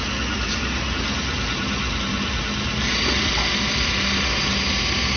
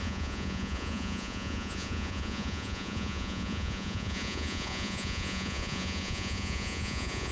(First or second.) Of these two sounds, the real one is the first